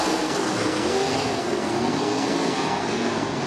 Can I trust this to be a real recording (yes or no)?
no